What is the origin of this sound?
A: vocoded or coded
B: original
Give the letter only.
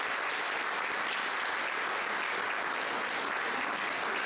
B